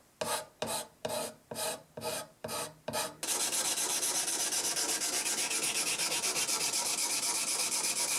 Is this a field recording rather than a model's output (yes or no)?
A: yes